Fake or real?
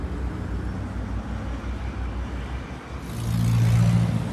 real